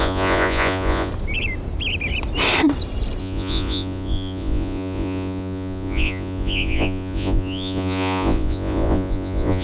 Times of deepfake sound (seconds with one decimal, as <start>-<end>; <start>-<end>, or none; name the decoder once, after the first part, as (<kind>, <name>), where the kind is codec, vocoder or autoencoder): 0.0-1.1 (vocoder, Vocos); 3.2-9.6